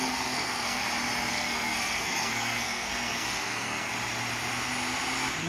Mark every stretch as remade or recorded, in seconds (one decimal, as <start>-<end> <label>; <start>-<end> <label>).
0.0-0.8 remade; 0.8-1.3 recorded; 1.3-3.9 remade; 3.9-5.5 recorded